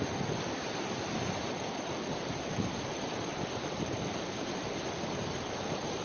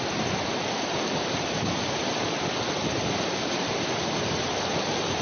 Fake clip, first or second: first